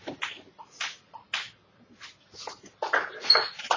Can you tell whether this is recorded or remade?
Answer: recorded